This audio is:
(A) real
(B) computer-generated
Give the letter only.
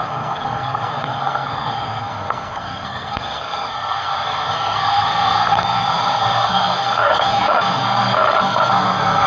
B